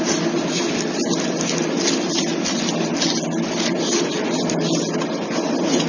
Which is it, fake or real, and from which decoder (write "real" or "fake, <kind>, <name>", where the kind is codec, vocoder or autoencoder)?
real